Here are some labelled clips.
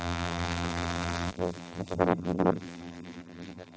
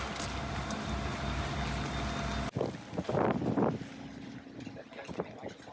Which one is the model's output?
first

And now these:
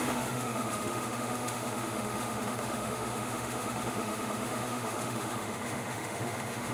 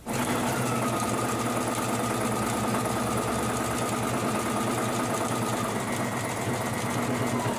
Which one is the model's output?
first